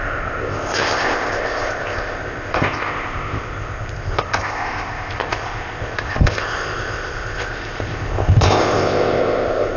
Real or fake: fake